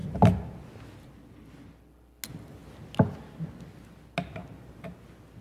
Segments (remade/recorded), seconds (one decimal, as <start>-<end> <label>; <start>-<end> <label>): 0.0-5.4 recorded